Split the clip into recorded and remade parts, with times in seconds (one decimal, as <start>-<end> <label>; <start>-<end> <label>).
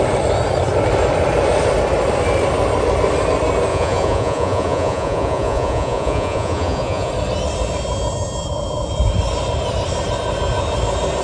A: 0.0-3.7 recorded; 3.7-7.1 remade; 7.1-11.2 recorded